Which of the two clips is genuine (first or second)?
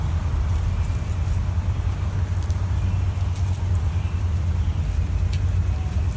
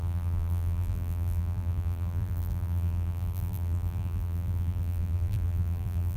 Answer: first